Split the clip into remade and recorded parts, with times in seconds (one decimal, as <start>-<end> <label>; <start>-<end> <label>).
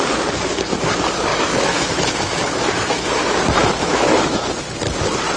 0.0-1.3 recorded; 1.3-4.5 remade; 4.5-5.4 recorded